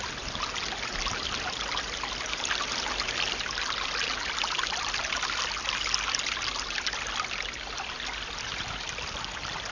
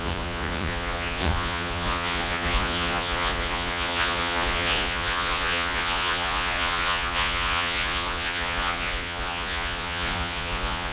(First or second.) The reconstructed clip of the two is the second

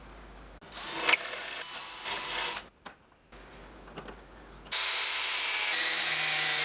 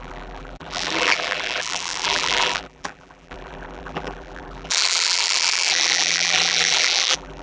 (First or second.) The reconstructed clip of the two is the second